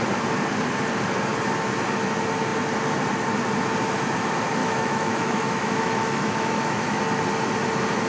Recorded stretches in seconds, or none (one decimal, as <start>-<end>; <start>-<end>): 0.0-4.6; 7.0-8.1